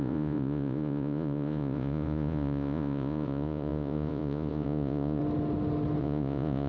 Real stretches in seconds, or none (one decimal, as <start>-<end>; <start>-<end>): 5.2-6.0